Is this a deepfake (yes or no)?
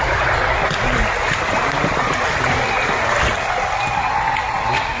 no